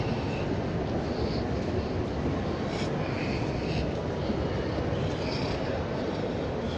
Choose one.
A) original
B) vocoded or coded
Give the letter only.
A